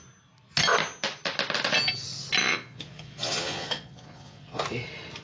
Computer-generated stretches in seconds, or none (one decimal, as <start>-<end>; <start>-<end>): 2.4-4.6